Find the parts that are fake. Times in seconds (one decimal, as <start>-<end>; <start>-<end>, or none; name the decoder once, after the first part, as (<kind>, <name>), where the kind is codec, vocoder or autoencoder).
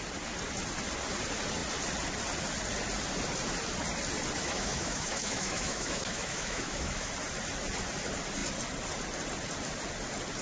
4.4-7.1 (autoencoder, DAC-VAE)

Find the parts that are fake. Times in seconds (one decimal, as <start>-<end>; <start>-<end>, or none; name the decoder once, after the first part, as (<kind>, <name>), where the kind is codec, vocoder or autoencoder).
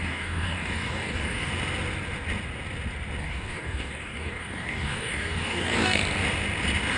0.0-1.5 (codec, DAC); 3.2-6.0